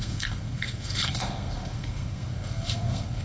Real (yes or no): no